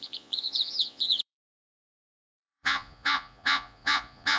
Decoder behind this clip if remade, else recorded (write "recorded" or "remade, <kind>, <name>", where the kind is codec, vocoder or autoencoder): remade, vocoder, Vocos